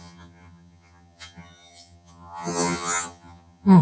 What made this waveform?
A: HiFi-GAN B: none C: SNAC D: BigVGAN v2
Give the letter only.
A